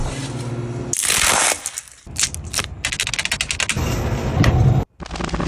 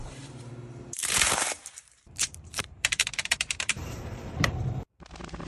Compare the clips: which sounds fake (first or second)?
second